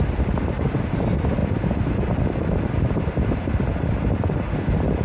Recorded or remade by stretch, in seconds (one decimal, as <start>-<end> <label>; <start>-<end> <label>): 0.0-5.0 recorded